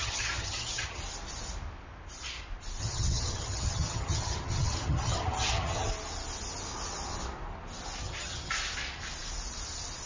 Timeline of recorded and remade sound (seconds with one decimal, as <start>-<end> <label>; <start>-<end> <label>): 0.0-1.0 remade; 1.0-2.8 recorded; 2.8-5.9 remade; 5.9-8.0 recorded; 8.0-8.5 remade; 8.5-10.1 recorded